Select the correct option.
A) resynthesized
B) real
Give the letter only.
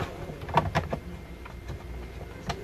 B